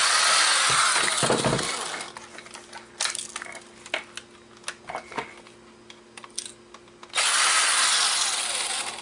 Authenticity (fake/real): real